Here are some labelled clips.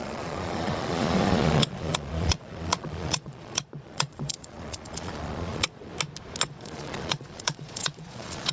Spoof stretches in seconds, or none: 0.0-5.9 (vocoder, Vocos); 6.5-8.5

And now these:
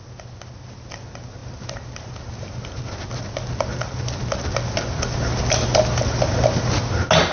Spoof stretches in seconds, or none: none

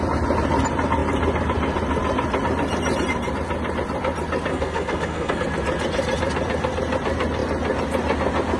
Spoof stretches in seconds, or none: 4.5-5.4 (codec, SNAC)

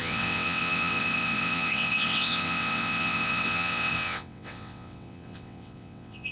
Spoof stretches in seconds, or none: 0.0-6.3 (vocoder, WaveNeXt)

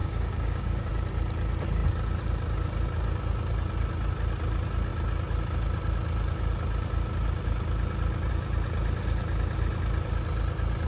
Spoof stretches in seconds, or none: 0.0-0.9 (codec, DAC)

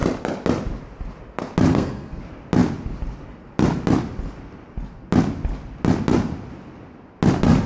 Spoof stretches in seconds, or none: 1.7-2.2 (codec, SNAC)

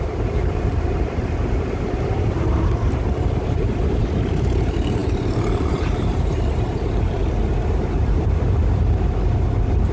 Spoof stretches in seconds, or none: 0.0-7.2 (vocoder, BigVGAN v2); 7.8-9.9